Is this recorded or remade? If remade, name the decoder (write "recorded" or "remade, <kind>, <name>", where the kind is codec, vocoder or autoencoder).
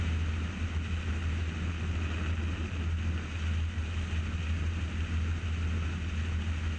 recorded